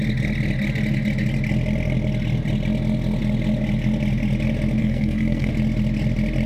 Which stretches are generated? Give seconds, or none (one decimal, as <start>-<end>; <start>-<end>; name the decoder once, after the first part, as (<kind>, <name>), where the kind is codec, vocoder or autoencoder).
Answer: 4.8-5.5 (codec, SNAC)